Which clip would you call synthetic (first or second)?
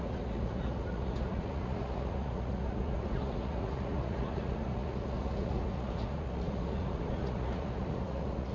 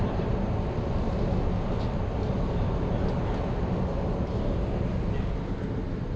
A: first